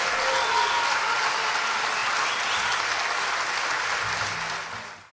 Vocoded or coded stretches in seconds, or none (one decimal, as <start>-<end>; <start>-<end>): none